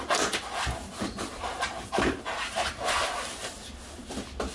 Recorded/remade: recorded